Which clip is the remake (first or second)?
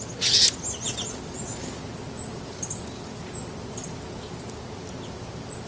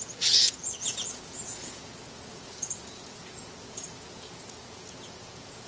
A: second